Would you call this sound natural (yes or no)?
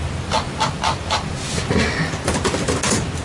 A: yes